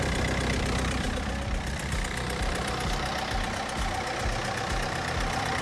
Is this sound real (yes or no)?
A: no